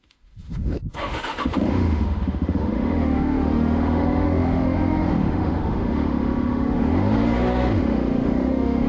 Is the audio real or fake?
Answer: fake